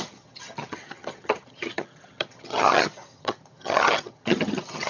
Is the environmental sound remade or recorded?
remade